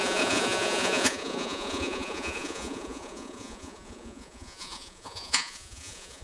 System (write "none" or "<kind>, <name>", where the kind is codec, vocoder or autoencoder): vocoder, Vocos